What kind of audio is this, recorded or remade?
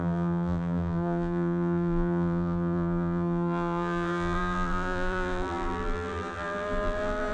remade